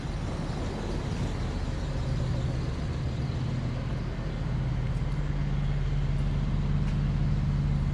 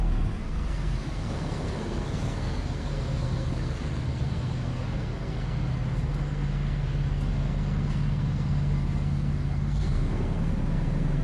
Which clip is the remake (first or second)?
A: second